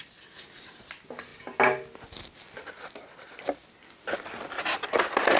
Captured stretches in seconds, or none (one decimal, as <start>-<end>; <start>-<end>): 0.0-3.6; 4.9-5.4